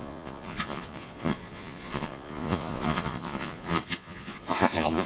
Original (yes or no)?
no